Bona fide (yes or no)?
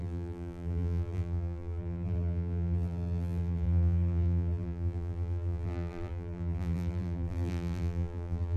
no